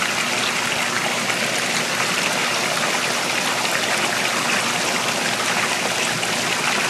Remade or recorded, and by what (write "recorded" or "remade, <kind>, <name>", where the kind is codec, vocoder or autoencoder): recorded